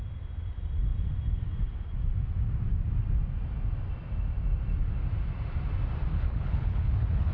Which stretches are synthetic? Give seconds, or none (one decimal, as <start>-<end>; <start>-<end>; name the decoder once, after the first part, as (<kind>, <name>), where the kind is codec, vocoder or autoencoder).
6.1-7.3 (codec, HILCodec)